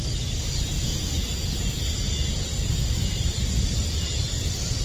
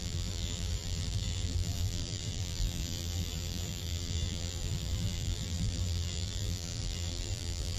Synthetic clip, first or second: second